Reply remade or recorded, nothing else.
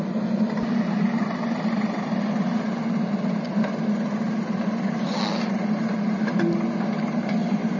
recorded